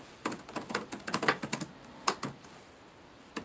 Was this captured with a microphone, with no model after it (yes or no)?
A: yes